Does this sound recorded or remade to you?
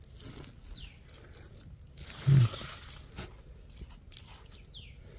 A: recorded